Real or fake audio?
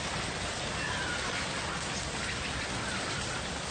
real